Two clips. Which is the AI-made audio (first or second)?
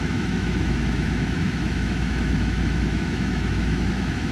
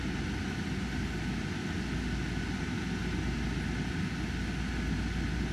first